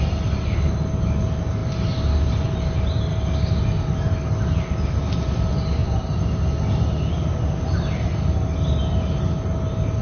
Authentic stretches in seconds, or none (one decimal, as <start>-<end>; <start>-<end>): 0.0-3.1; 3.6-10.0